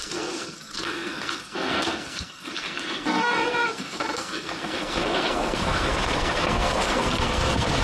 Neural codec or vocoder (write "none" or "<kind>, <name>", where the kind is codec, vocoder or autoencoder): codec, SNAC